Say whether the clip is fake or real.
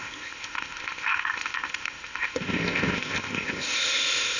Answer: fake